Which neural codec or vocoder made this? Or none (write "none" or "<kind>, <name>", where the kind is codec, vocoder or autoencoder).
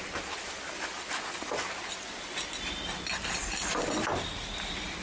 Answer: none